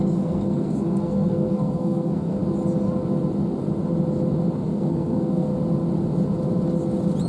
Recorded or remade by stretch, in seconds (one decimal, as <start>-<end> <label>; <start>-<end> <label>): 0.0-2.4 remade; 2.4-4.7 recorded; 4.7-5.5 remade; 5.5-7.3 recorded